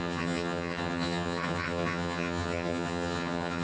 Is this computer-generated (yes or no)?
yes